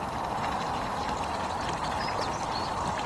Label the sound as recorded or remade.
recorded